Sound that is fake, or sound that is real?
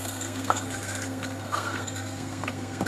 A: fake